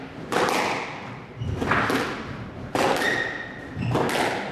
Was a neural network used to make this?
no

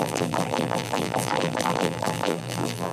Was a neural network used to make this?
yes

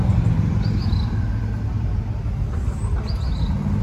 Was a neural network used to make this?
no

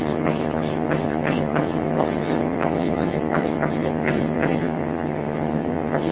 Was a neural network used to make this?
yes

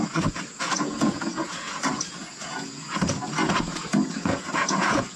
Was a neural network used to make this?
yes